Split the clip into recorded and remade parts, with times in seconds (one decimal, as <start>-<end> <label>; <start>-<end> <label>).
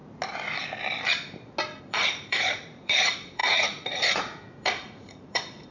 0.0-1.8 recorded; 1.8-5.7 remade